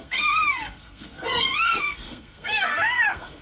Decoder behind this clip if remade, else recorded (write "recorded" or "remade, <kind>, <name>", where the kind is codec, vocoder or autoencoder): remade, codec, SNAC